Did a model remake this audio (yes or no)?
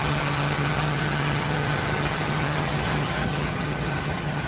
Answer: yes